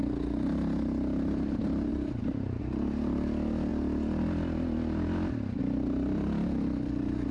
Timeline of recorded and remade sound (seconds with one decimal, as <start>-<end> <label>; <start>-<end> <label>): 0.0-1.9 recorded; 1.9-2.6 remade; 2.6-7.3 recorded